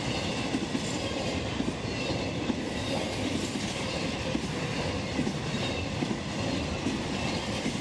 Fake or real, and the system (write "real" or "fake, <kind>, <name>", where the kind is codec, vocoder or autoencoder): real